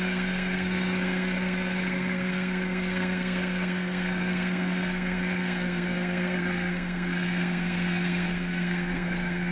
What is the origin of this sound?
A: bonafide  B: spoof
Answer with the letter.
B